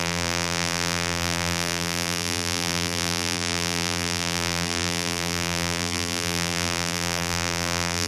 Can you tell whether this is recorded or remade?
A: remade